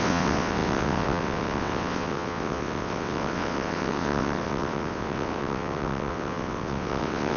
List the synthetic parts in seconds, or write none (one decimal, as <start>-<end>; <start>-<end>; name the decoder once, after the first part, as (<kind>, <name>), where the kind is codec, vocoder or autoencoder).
0.0-7.4 (vocoder, WaveNeXt)